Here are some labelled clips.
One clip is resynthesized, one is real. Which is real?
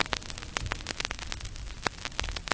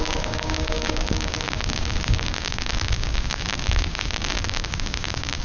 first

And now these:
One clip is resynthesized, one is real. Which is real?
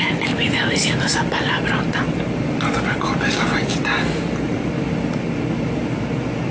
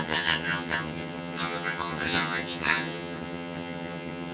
first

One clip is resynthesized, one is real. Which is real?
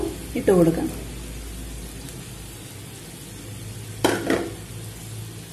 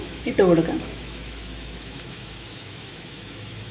first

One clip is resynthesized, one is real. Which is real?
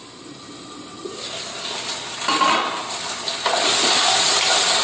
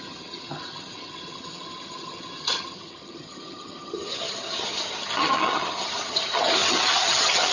first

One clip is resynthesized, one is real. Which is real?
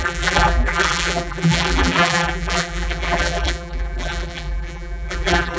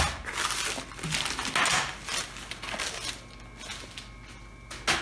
second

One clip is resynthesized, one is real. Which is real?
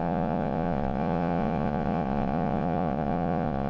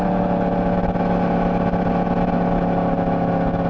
second